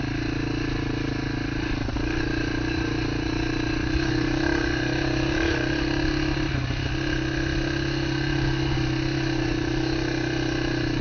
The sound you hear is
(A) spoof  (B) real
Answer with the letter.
B